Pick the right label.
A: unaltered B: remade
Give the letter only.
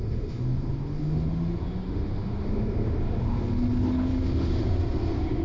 B